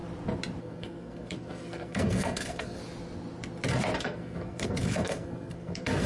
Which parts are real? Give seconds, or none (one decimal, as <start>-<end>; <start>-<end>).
0.0-0.6; 2.8-4.0

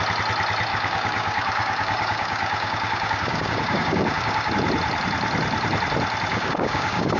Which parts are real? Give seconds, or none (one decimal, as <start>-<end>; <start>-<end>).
0.0-0.7; 4.5-6.3